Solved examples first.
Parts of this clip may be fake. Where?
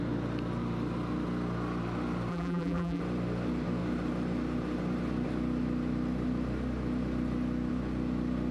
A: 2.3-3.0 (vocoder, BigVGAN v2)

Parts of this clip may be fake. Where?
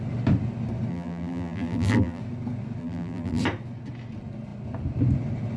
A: 0.9-2.2 (vocoder, BigVGAN v2); 2.8-3.4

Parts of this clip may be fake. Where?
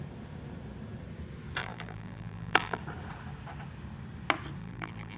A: 1.6-2.8 (vocoder, BigVGAN v2); 4.6-5.2